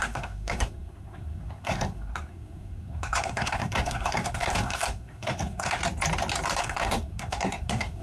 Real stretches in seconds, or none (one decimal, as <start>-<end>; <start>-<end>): 5.8-6.6